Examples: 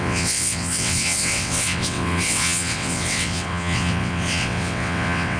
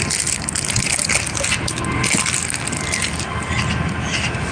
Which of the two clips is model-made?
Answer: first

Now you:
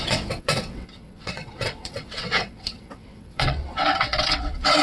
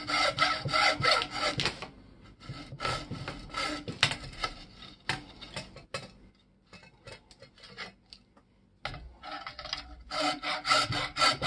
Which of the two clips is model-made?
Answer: first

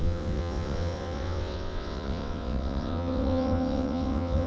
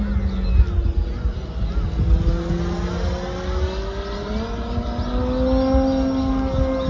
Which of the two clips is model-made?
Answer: first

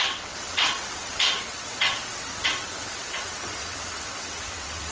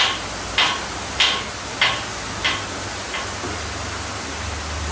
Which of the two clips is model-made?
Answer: first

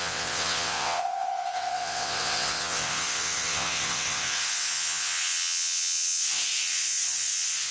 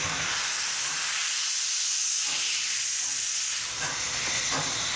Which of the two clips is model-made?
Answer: first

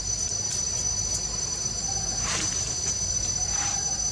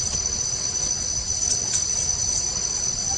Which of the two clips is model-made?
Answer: second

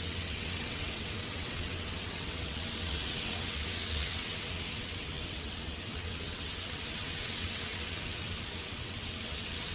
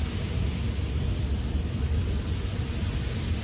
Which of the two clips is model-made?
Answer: first